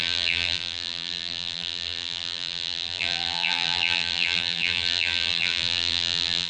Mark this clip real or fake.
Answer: fake